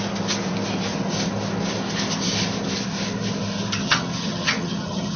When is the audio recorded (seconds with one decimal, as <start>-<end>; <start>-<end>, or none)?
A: 0.0-3.8